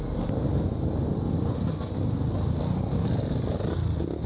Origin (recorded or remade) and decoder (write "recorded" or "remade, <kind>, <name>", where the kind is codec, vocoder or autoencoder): recorded